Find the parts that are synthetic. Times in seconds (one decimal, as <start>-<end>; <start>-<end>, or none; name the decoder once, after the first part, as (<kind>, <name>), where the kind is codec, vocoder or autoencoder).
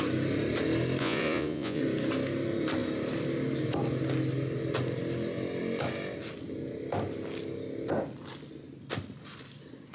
1.0-1.8 (vocoder, Vocos)